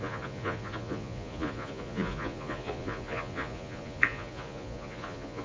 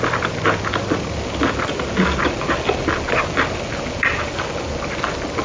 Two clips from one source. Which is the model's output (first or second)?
first